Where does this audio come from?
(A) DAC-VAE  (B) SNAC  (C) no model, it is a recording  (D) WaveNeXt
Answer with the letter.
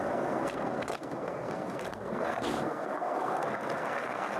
B